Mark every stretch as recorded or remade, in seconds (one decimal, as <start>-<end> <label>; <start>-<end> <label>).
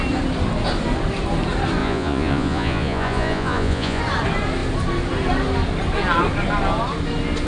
0.0-1.8 recorded; 1.8-4.0 remade; 4.0-7.5 recorded